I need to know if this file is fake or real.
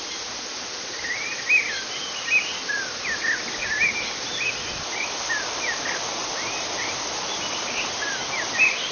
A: real